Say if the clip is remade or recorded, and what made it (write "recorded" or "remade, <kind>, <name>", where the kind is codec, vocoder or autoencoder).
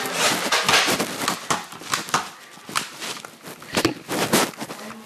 recorded